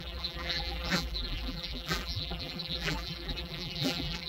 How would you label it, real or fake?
fake